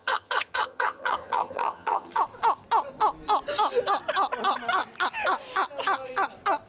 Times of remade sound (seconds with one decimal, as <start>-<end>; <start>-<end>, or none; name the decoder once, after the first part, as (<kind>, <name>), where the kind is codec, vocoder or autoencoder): 0.0-2.2 (vocoder, HiFi-GAN)